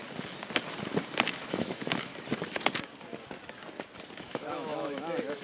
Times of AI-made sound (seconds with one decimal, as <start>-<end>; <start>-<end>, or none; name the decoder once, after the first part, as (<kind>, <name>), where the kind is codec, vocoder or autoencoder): 1.4-2.1 (autoencoder, DAC-VAE); 4.2-5.4